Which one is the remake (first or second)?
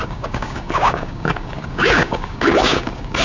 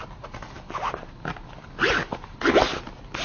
first